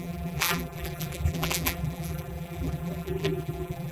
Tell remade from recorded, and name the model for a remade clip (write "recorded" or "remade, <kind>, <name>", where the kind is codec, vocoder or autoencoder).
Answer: remade, vocoder, BigVGAN v2